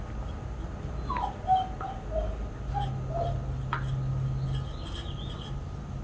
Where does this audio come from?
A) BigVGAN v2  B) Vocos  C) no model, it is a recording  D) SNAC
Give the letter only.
C